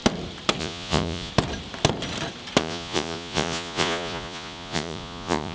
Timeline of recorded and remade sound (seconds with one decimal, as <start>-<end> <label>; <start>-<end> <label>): 0.0-0.6 recorded; 0.6-1.3 remade; 1.3-2.6 recorded; 2.6-5.5 remade